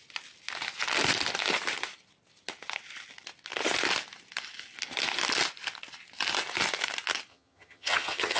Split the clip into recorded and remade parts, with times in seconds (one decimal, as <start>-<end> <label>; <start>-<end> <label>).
0.0-7.3 recorded; 7.3-8.4 remade